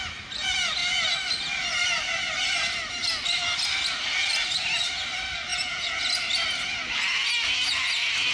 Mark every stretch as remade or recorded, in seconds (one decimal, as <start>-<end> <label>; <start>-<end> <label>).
0.0-5.5 recorded; 5.5-6.0 remade; 6.0-8.3 recorded